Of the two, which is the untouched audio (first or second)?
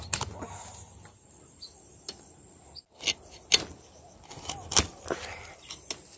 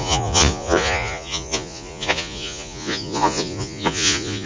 first